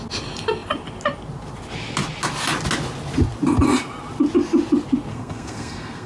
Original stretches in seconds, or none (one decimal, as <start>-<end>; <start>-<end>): 0.0-5.1